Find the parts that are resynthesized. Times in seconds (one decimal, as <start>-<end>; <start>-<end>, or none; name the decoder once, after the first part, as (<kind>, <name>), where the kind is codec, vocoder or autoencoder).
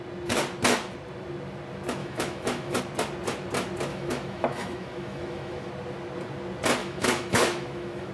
2.0-2.8 (autoencoder, DAC-VAE); 3.9-5.7; 6.8-8.1